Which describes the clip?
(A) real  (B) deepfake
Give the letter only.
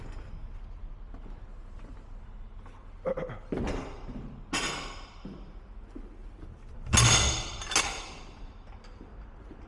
A